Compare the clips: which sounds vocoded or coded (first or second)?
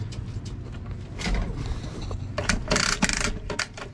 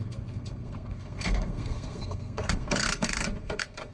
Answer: second